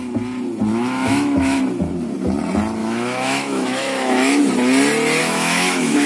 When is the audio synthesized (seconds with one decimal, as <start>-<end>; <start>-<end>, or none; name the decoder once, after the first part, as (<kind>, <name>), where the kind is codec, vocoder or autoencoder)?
0.7-1.6 (autoencoder, DAC-VAE); 2.8-4.4; 5.2-6.1